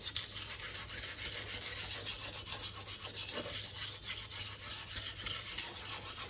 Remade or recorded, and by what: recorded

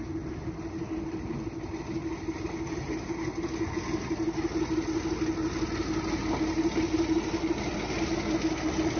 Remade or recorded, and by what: recorded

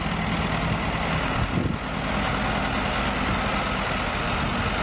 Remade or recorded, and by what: recorded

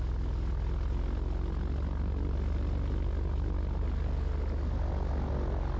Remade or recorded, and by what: recorded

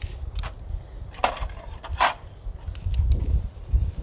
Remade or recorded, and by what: recorded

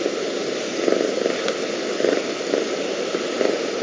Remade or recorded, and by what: recorded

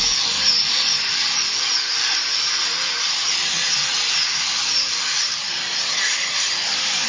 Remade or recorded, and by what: recorded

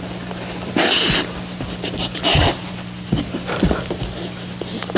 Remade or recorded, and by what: recorded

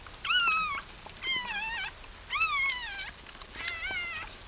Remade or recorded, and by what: recorded